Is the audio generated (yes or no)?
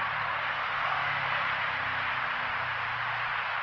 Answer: no